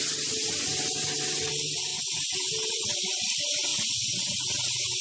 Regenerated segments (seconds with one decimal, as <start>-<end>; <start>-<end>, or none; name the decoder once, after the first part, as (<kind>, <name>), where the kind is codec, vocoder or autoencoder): 0.0-0.7 (vocoder, BigVGAN v2); 1.5-3.7; 4.2-5.0